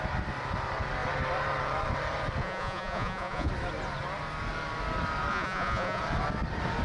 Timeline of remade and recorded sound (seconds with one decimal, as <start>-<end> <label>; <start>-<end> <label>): 0.0-2.4 recorded; 2.4-3.5 remade; 3.5-5.3 recorded; 5.3-6.0 remade; 6.0-6.8 recorded